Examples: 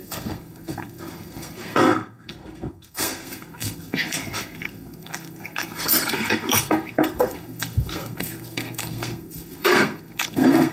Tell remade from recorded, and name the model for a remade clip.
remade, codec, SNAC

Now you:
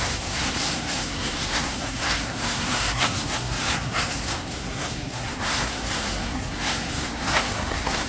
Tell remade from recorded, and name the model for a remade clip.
remade, codec, SNAC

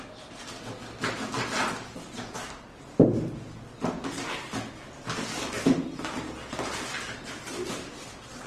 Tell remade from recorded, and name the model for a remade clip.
recorded